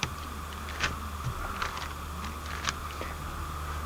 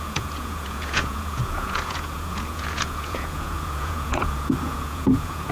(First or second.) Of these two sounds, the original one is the first